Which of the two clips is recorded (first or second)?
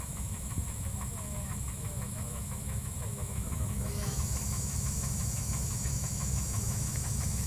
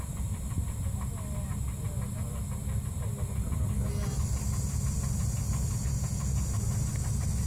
second